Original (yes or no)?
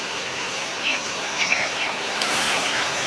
no